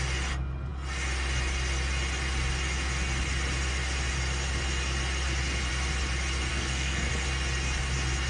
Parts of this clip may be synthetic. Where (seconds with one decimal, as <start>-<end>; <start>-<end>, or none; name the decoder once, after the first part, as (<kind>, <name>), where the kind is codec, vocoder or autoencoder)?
6.5-7.1 (codec, SNAC)